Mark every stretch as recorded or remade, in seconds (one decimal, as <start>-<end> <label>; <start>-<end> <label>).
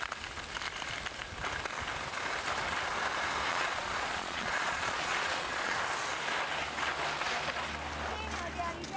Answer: 0.0-3.5 recorded; 3.5-5.8 remade; 5.8-9.0 recorded